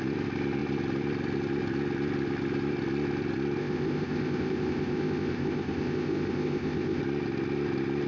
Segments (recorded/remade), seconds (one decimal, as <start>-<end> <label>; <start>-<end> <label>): 0.0-3.6 recorded; 3.6-7.0 remade; 7.0-8.1 recorded